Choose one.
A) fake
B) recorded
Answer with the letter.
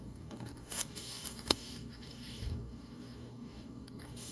A